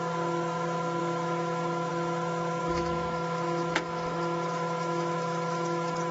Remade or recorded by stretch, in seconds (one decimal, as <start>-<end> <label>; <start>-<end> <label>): 0.0-1.0 recorded; 1.0-1.9 remade; 1.9-2.6 recorded; 2.6-6.1 remade